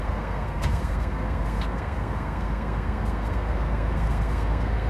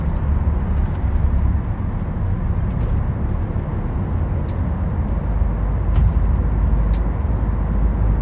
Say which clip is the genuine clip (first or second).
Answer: second